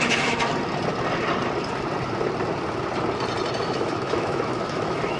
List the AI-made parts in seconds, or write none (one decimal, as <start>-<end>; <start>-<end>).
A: 0.0-0.5; 3.6-5.2